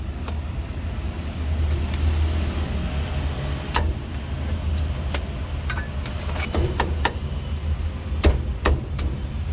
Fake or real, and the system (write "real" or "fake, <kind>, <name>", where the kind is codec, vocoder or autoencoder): real